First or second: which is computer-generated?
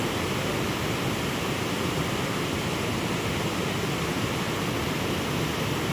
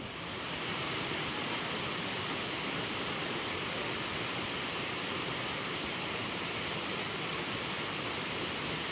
second